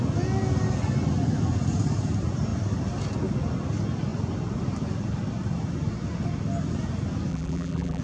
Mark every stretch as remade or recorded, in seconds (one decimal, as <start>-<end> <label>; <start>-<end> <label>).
0.0-7.3 recorded; 7.3-8.0 remade